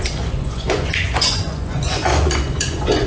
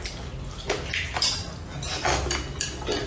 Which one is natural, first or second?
second